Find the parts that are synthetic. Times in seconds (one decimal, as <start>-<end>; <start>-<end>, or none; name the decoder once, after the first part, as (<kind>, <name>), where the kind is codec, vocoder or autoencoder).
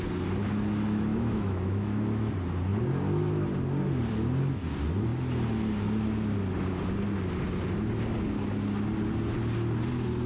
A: 1.1-2.3 (autoencoder, DAC-VAE)